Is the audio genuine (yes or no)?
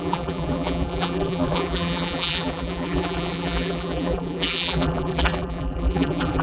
no